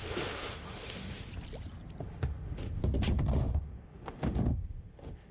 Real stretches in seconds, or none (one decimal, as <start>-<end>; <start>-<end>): 1.3-2.0; 2.8-3.4